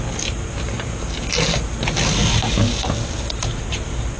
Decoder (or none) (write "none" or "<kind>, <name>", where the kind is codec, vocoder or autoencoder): none